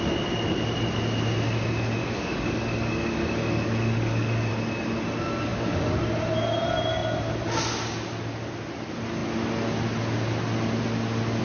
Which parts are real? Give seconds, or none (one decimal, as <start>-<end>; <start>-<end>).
0.0-2.0; 4.5-5.5; 6.0-11.4